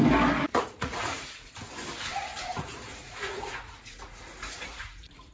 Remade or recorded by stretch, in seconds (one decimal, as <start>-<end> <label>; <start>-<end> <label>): 0.0-0.5 recorded; 0.5-1.5 remade; 1.5-2.1 recorded; 2.1-5.3 remade